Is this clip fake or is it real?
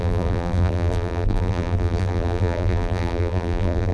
fake